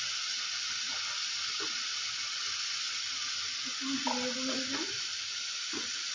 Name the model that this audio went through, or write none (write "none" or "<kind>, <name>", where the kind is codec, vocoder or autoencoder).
none